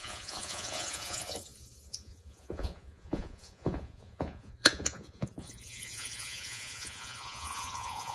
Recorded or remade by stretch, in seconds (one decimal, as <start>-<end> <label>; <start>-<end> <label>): 0.0-8.1 remade